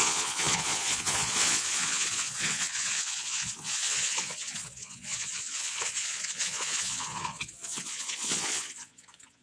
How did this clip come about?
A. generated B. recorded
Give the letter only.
A